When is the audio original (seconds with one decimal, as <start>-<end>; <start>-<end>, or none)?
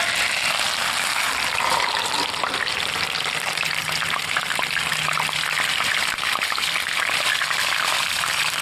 0.0-2.7; 3.3-4.9; 8.2-8.6